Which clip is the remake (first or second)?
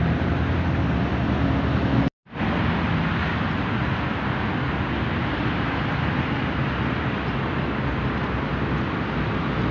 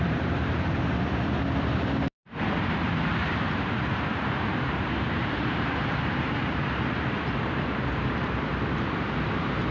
second